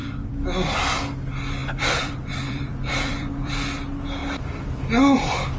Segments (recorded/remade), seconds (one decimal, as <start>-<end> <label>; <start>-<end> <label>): 0.0-1.6 recorded; 1.6-3.5 remade; 3.5-5.6 recorded